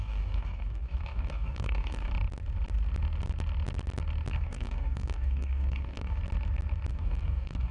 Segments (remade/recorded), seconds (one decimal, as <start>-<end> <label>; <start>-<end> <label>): 0.0-2.1 remade; 2.1-4.3 recorded; 4.3-6.2 remade; 6.2-6.9 recorded; 6.9-7.7 remade

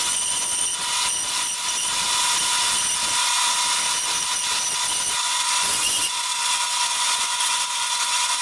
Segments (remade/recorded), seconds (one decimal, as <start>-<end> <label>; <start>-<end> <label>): 0.0-0.7 remade; 0.7-5.2 recorded; 5.2-8.4 remade